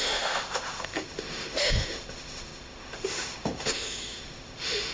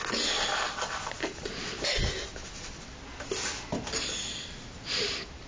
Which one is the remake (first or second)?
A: first